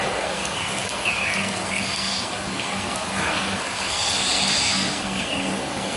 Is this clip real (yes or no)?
no